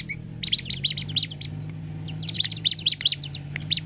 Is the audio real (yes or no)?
yes